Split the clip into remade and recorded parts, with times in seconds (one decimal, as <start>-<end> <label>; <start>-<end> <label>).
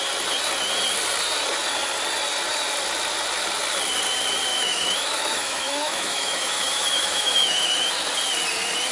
0.0-4.5 recorded; 4.5-7.9 remade; 7.9-8.9 recorded